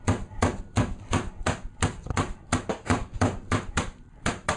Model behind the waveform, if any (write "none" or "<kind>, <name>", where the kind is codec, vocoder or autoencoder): vocoder, BigVGAN v2